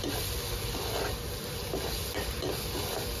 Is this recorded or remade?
recorded